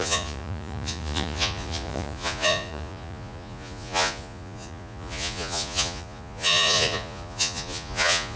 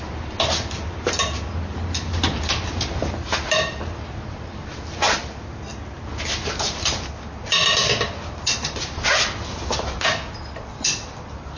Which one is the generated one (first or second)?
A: first